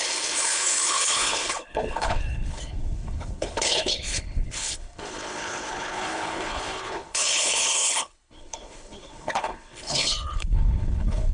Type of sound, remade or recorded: remade